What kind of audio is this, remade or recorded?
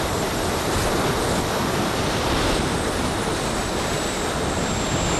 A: recorded